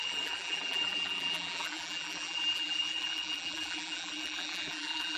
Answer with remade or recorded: remade